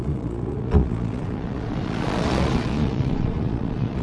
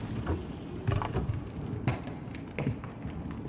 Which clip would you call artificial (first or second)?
first